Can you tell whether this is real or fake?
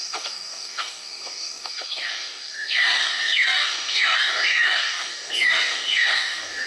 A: fake